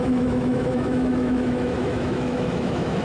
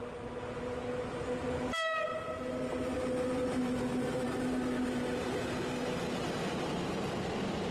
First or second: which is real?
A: second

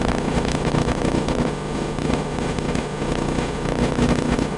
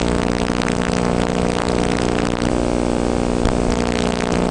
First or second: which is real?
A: second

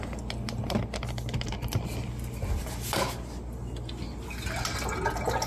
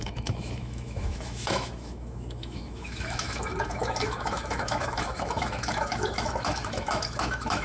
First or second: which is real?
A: first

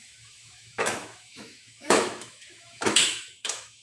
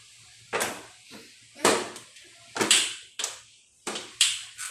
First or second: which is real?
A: second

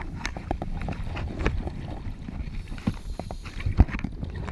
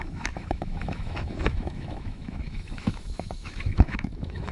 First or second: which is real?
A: first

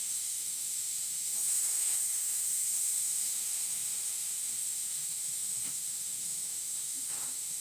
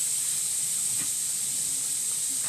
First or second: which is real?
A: second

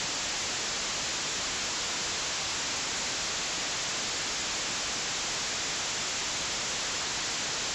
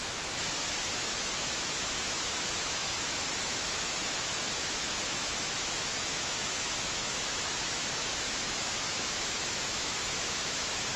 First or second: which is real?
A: first